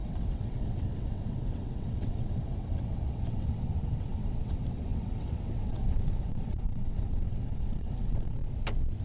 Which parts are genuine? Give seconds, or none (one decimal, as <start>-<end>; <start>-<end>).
8.4-9.0